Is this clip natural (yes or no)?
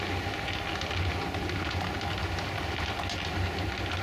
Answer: yes